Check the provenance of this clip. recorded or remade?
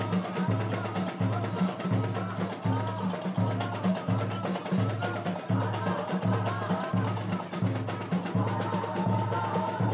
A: recorded